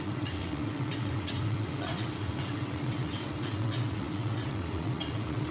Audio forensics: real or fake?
fake